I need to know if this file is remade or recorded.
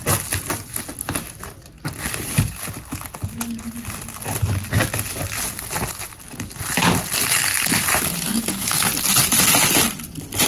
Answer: recorded